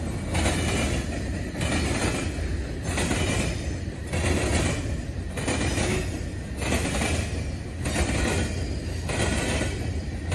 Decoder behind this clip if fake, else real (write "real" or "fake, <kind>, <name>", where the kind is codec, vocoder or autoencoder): real